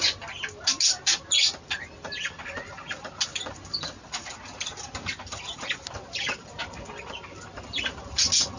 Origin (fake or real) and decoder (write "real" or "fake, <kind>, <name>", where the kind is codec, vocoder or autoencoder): real